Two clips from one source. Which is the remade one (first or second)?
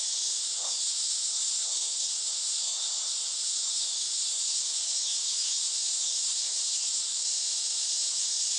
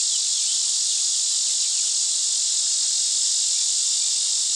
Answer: first